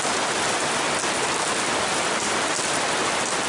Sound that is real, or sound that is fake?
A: real